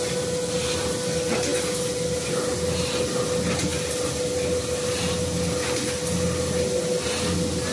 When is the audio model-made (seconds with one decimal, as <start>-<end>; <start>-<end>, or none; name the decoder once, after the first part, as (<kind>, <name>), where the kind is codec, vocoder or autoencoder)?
none